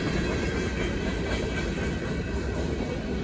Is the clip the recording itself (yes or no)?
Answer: yes